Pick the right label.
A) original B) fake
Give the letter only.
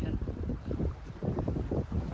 B